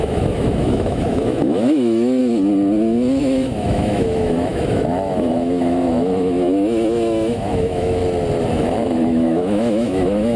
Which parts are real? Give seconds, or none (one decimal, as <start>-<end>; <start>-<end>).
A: 2.2-3.2; 8.0-8.6